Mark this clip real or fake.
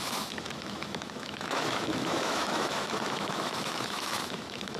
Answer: fake